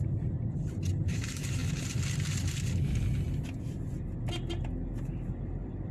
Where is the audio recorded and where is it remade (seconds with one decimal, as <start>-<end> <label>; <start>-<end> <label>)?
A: 0.0-1.6 remade; 1.6-5.1 recorded; 5.1-5.9 remade